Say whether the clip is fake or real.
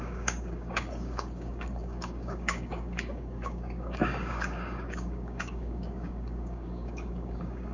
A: fake